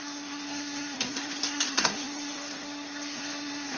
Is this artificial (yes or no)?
yes